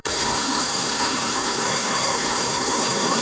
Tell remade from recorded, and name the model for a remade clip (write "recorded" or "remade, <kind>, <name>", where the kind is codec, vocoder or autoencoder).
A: remade, codec, SNAC